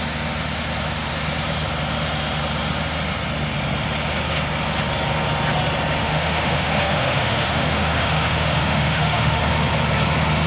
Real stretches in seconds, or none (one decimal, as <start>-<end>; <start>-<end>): 0.0-6.0; 9.4-10.5